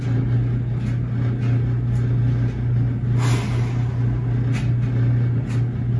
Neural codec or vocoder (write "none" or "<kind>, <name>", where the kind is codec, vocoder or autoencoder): none